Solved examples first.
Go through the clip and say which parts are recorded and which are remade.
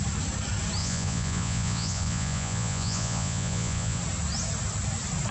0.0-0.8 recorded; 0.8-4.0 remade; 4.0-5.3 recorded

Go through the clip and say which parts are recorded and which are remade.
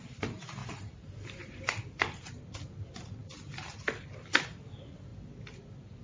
0.0-0.6 recorded; 0.6-2.3 remade; 2.3-6.0 recorded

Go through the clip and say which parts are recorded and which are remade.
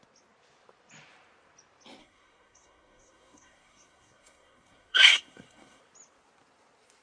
0.0-2.0 recorded; 2.0-5.8 remade; 5.8-7.0 recorded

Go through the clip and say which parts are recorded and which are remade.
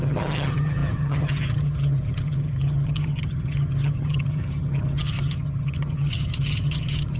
0.0-7.2 remade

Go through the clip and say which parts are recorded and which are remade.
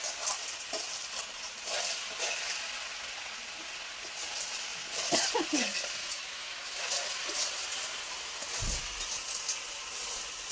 0.0-6.0 recorded; 6.0-6.9 remade; 6.9-10.5 recorded